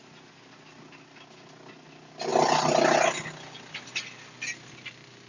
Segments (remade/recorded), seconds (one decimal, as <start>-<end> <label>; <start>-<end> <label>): 0.0-5.3 recorded